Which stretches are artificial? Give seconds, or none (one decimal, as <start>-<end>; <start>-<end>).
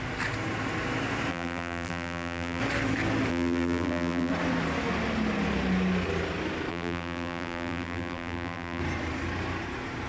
1.3-2.6; 3.3-4.3; 6.7-8.8